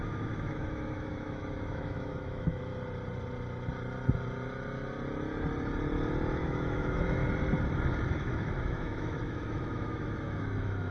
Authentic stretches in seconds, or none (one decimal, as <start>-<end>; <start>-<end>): 2.7-6.4; 7.2-8.1